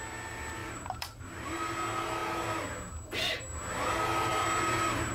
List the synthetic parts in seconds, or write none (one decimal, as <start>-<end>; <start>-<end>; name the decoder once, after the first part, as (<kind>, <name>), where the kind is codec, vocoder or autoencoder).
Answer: 0.6-1.2 (vocoder, BigVGAN v2)